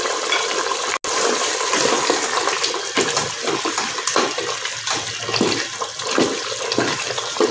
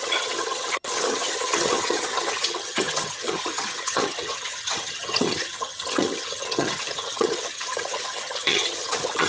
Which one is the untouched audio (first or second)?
first